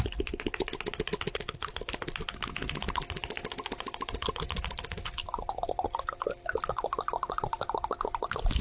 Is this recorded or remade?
recorded